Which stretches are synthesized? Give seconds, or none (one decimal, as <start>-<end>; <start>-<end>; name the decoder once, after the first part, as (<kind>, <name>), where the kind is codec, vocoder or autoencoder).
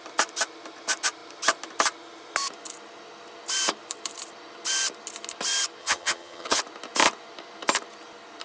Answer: 5.8-6.6 (vocoder, HiFi-GAN)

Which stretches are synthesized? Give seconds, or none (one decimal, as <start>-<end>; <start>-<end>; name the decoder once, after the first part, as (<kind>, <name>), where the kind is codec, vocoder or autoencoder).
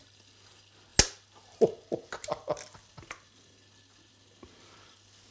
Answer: none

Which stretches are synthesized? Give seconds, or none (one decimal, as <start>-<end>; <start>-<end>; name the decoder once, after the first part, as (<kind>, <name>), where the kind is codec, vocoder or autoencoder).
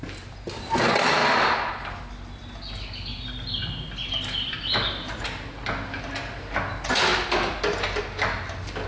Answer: none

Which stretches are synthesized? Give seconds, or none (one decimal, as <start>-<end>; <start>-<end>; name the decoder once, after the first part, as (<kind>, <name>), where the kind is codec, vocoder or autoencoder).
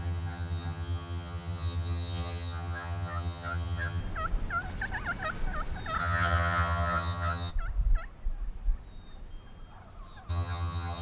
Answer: 0.0-4.0 (vocoder, HiFi-GAN); 6.0-7.5; 10.3-11.0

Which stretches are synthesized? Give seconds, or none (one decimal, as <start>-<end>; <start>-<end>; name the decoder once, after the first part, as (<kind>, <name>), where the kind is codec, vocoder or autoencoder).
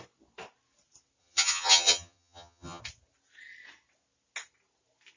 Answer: 1.2-2.8 (vocoder, HiFi-GAN)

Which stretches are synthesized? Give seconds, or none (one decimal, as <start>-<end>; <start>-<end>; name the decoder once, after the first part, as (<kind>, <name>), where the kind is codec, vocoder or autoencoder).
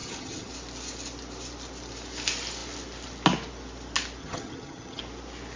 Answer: 0.0-0.5 (vocoder, HiFi-GAN); 4.2-5.0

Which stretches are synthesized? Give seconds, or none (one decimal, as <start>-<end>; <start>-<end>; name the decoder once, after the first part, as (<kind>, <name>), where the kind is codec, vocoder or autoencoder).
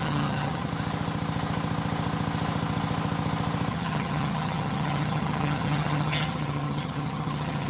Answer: 0.0-0.7 (vocoder, HiFi-GAN); 3.7-7.7